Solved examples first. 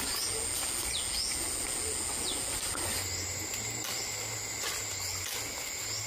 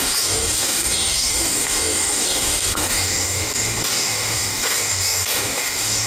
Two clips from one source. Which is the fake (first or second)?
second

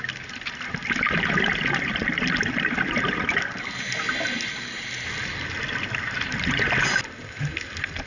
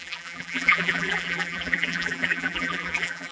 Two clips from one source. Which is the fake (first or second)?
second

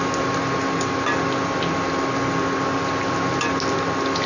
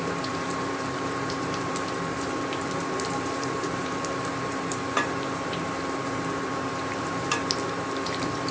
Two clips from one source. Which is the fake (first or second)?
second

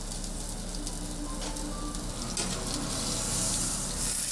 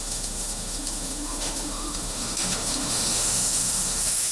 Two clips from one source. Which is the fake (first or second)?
second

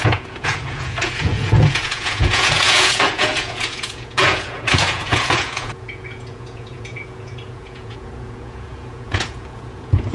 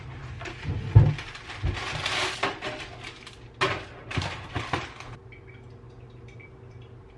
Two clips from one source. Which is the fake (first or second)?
first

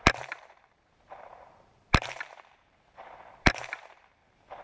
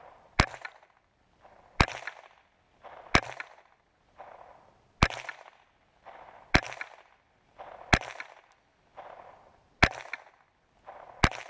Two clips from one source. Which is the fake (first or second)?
first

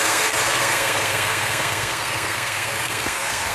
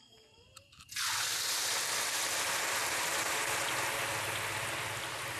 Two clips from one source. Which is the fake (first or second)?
first